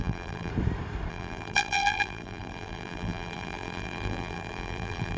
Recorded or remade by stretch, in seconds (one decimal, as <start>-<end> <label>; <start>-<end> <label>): 0.0-0.5 remade; 0.5-1.1 recorded; 1.1-5.2 remade